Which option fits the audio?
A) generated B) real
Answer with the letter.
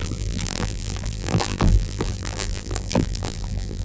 A